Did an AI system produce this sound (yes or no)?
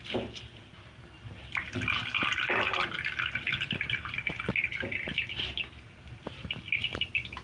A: no